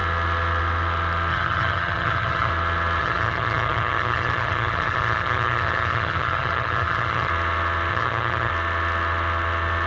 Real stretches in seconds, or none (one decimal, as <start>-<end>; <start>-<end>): 0.0-1.3; 2.5-3.0; 7.3-7.9; 8.5-9.9